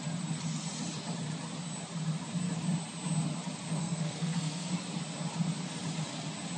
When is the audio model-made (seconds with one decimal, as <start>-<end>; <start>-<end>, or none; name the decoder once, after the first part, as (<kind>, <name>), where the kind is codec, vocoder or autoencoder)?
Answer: 3.8-4.7 (codec, SNAC)